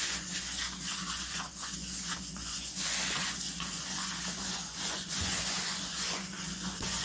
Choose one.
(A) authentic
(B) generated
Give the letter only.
B